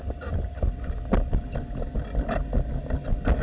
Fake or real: real